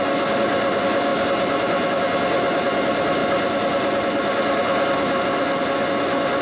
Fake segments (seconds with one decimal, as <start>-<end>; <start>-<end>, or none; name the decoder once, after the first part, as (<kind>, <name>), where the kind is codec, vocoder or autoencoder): none